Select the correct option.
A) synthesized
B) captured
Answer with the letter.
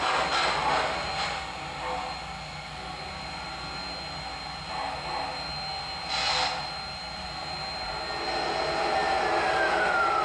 B